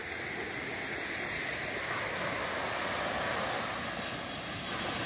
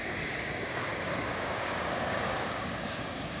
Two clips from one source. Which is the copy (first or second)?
second